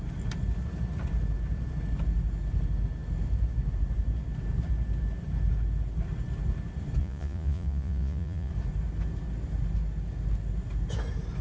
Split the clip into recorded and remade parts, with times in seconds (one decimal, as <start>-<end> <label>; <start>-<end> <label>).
0.0-7.0 recorded; 7.0-8.5 remade; 8.5-11.4 recorded